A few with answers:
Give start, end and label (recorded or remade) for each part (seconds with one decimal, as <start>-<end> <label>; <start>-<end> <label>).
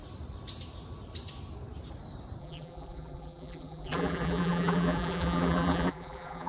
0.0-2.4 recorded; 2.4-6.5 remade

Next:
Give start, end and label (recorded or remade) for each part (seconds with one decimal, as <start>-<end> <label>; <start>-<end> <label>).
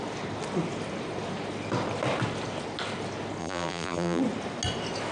0.0-3.4 recorded; 3.4-4.2 remade; 4.2-5.1 recorded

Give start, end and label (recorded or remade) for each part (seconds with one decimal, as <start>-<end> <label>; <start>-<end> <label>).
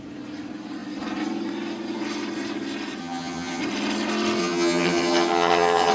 0.0-3.0 recorded; 3.0-3.6 remade; 3.6-4.4 recorded; 4.4-5.9 remade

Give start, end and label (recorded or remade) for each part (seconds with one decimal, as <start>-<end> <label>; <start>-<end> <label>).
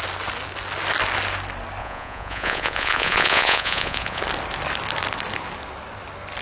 0.0-1.8 recorded; 1.8-4.2 remade; 4.2-6.4 recorded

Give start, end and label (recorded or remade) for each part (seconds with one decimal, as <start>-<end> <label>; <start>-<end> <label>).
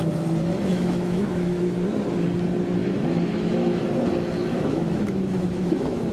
0.0-0.7 recorded; 0.7-1.6 remade; 1.6-2.8 recorded; 2.8-3.8 remade; 3.8-4.5 recorded; 4.5-6.1 remade